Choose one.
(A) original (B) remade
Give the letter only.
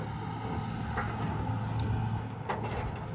A